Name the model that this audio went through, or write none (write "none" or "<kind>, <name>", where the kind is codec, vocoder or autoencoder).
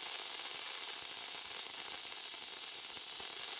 none